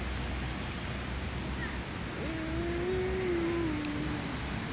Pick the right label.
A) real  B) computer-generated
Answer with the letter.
A